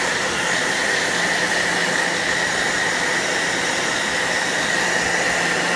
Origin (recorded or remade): recorded